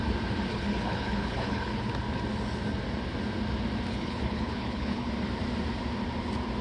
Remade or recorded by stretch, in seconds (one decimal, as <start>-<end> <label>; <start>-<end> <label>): 0.0-0.5 recorded; 0.5-1.9 remade; 1.9-3.9 recorded; 3.9-5.1 remade; 5.1-6.6 recorded